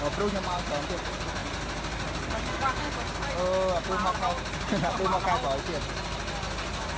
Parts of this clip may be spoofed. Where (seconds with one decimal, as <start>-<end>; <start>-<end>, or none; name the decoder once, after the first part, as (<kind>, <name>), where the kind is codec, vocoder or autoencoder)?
none